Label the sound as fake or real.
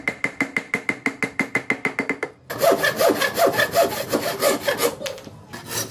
real